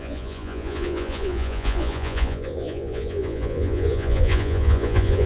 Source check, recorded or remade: remade